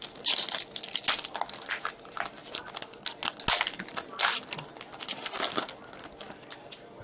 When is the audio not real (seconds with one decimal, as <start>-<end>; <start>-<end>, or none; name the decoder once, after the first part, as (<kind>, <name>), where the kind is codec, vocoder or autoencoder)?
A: none